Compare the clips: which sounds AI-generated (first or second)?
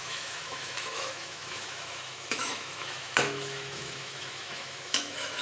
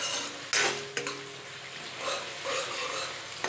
first